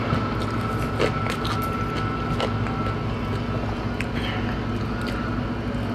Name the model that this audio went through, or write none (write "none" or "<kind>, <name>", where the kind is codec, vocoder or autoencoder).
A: none